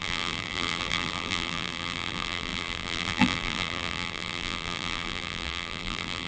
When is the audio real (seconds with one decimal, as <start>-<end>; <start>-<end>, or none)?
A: none